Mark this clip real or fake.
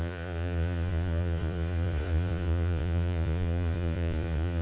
fake